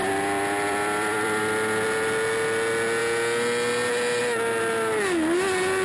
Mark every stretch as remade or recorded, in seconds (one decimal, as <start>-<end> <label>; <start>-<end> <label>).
0.0-1.4 remade; 1.4-5.8 recorded